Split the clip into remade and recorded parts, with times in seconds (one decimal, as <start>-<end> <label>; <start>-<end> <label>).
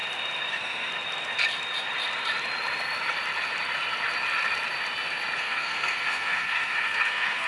0.0-0.5 recorded; 0.5-0.9 remade; 0.9-5.4 recorded; 5.4-7.5 remade